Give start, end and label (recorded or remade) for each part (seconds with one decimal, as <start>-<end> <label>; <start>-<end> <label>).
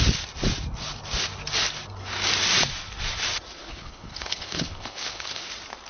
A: 0.0-3.6 recorded; 3.6-5.5 remade; 5.5-5.9 recorded